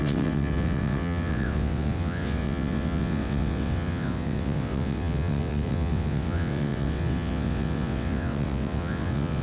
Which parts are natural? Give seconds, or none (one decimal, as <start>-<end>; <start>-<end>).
none